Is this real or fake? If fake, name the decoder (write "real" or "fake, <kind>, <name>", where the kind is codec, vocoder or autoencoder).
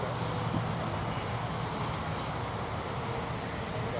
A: real